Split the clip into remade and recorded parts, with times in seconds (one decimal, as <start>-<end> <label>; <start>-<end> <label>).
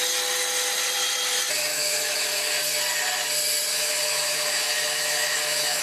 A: 0.0-1.7 recorded; 1.7-2.6 remade; 2.6-3.7 recorded; 3.7-5.8 remade